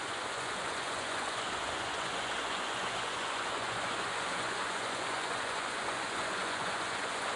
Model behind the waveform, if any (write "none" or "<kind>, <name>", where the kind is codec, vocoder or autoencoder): vocoder, Vocos